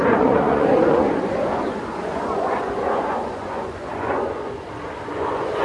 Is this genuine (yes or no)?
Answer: no